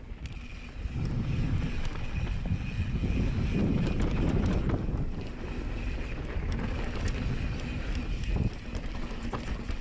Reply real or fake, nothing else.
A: real